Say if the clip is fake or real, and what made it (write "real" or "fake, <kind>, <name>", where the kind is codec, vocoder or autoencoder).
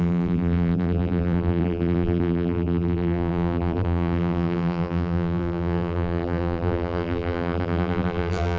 fake, vocoder, BigVGAN v2